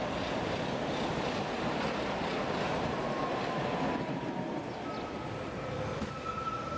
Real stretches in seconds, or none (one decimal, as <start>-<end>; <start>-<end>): 0.0-6.8